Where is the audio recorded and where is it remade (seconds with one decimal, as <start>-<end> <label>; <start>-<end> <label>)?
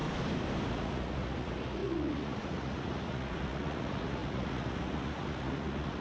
0.0-0.7 recorded; 0.7-6.0 remade